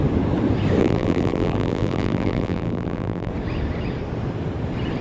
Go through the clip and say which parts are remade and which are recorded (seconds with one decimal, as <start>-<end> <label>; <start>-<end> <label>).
0.0-0.8 recorded; 0.8-3.3 remade; 3.3-5.0 recorded